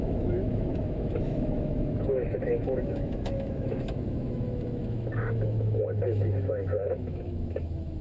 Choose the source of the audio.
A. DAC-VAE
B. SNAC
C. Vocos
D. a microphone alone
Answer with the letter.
A